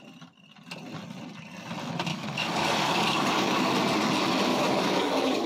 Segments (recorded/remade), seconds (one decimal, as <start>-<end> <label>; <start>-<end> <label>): 0.0-2.1 recorded; 2.1-3.7 remade; 3.7-4.5 recorded; 4.5-5.5 remade